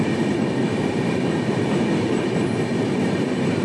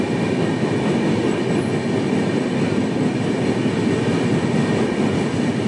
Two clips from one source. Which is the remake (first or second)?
first